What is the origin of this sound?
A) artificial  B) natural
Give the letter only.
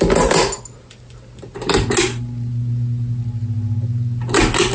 B